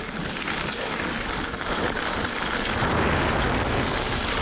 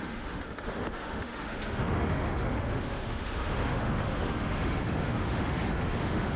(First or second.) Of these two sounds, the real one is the first